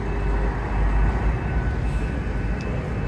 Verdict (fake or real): real